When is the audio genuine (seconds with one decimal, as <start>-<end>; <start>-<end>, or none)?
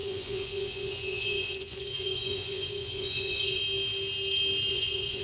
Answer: 3.6-4.7